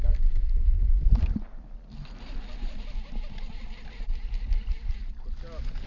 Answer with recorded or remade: recorded